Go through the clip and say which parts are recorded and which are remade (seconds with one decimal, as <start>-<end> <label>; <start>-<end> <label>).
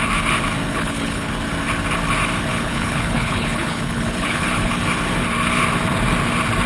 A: 0.0-0.7 recorded; 0.7-1.3 remade; 1.3-2.5 recorded; 2.5-4.7 remade; 4.7-6.7 recorded